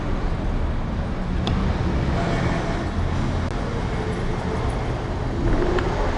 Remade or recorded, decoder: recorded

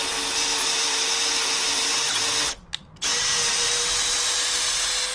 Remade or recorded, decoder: recorded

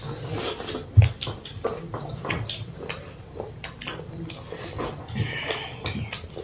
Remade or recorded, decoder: recorded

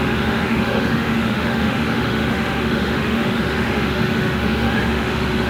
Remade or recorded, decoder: remade, autoencoder, DAC-VAE